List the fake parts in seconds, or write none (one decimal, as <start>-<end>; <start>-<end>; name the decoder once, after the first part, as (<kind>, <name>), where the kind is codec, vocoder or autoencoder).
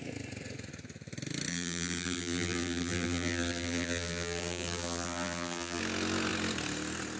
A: 1.5-5.8 (vocoder, BigVGAN v2)